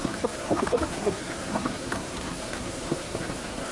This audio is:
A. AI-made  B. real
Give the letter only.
A